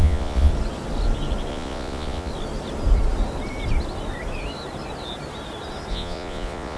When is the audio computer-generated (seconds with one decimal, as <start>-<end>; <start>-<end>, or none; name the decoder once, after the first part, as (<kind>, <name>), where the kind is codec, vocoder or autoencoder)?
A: 0.0-0.5 (vocoder, Vocos); 1.5-2.3; 5.9-6.8